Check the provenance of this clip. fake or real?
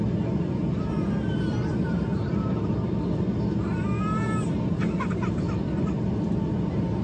real